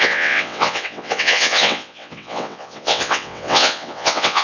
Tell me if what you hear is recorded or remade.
remade